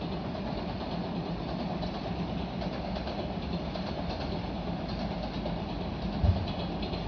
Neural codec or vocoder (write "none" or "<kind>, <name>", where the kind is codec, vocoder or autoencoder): none